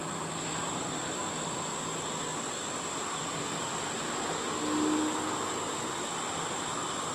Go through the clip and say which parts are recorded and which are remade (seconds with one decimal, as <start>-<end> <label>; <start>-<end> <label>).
0.0-7.1 recorded